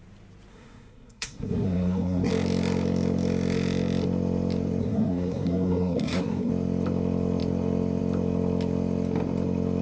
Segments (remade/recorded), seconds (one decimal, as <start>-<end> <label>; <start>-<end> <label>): 0.0-0.5 recorded; 0.5-2.3 remade; 2.3-4.8 recorded; 4.8-6.5 remade; 6.5-9.8 recorded